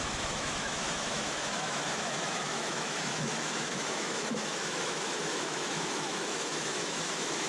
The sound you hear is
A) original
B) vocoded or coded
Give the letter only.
B